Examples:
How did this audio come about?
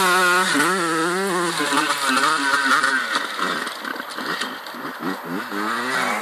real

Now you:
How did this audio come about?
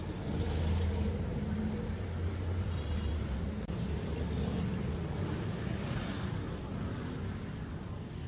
real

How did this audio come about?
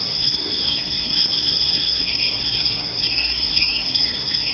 fake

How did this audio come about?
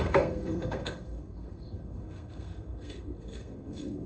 fake